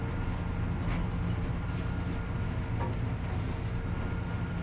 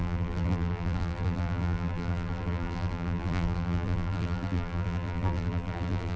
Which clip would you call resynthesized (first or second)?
second